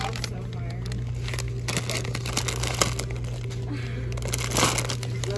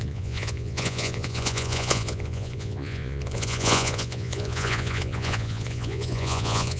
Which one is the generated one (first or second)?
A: second